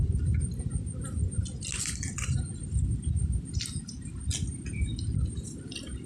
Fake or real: real